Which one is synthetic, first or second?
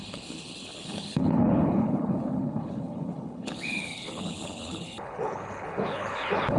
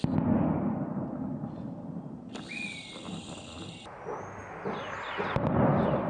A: first